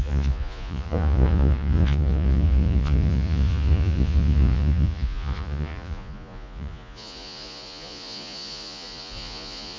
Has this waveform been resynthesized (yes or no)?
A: yes